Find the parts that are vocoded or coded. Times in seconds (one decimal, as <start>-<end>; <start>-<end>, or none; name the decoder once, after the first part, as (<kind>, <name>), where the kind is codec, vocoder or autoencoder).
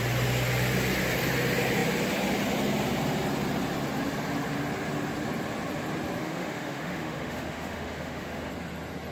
6.2-8.5 (autoencoder, DAC-VAE)